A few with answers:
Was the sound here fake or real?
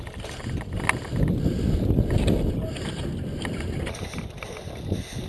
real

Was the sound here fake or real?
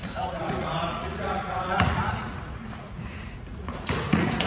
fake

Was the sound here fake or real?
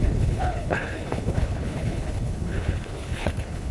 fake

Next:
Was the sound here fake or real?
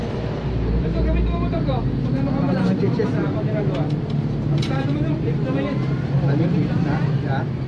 fake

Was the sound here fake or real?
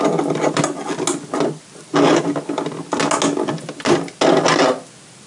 real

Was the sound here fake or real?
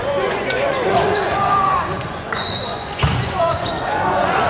fake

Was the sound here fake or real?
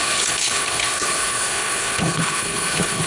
fake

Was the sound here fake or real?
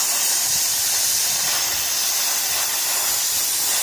real